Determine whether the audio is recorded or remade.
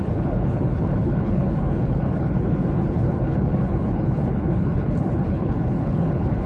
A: remade